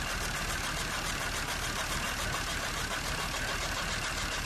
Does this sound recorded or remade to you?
recorded